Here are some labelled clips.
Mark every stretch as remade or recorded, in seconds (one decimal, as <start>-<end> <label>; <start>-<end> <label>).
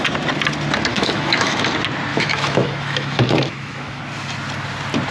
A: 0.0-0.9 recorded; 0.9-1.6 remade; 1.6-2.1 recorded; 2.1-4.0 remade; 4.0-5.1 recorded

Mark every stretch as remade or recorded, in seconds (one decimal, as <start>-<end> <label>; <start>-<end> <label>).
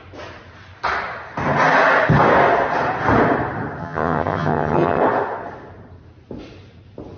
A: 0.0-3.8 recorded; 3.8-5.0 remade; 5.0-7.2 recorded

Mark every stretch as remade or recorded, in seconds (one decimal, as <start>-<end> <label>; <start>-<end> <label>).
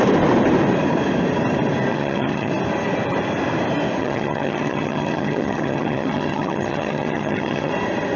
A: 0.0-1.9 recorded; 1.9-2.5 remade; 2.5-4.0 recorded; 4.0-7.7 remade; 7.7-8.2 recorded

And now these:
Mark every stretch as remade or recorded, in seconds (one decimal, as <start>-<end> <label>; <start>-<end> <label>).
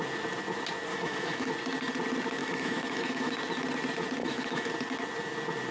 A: 0.0-0.9 recorded; 0.9-1.5 remade; 1.5-2.4 recorded; 2.4-3.3 remade; 3.3-4.2 recorded; 4.2-4.7 remade; 4.7-5.7 recorded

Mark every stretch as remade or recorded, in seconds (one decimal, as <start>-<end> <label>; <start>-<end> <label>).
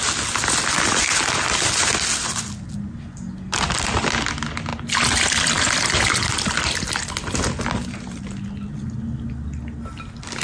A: 0.0-4.7 recorded; 4.7-8.2 remade; 8.2-10.4 recorded